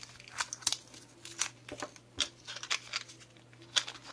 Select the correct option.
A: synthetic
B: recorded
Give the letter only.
B